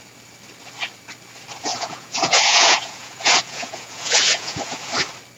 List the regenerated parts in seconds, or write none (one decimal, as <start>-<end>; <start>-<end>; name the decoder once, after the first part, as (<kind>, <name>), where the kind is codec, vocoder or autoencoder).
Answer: 1.7-4.9 (vocoder, Vocos)